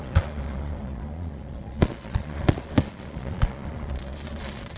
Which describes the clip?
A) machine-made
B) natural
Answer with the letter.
A